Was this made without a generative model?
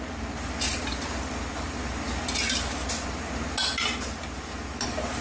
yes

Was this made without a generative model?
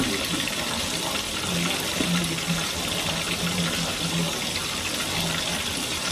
yes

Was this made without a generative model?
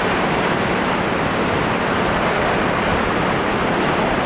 yes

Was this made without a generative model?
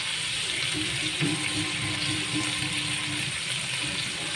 yes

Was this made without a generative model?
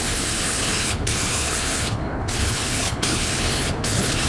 no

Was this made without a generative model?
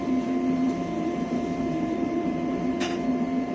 no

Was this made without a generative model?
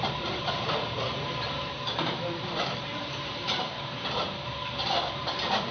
no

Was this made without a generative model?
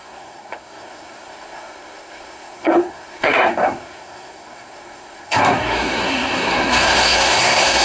no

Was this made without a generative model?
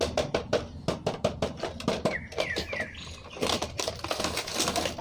yes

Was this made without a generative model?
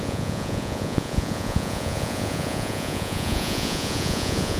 no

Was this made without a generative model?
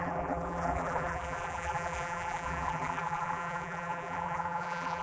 no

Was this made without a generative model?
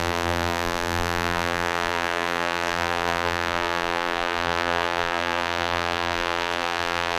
no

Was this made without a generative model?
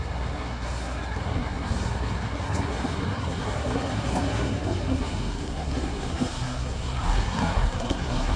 no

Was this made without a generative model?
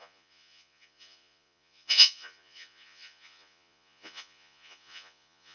no